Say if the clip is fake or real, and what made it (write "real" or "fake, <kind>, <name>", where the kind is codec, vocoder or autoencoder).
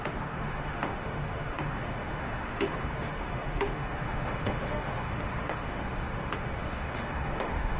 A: fake, autoencoder, DAC-VAE